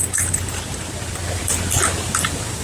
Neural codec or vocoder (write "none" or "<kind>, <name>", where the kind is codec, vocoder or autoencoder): none